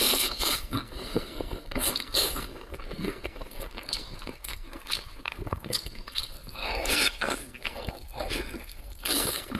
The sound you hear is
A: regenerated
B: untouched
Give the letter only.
A